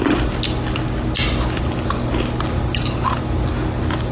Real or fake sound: real